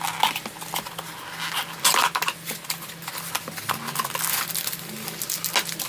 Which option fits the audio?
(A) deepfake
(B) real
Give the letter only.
B